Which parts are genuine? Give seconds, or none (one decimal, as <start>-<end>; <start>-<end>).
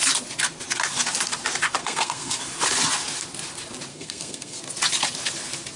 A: 0.0-1.8; 2.4-3.9; 4.6-5.8